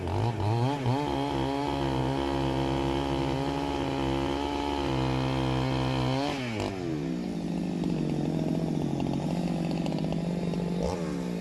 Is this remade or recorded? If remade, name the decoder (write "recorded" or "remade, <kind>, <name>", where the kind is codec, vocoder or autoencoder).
recorded